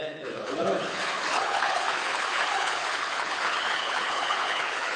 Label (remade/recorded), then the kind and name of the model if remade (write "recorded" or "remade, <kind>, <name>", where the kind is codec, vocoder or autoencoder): remade, codec, HILCodec